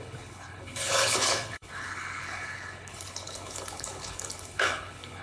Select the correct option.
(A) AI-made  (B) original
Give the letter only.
A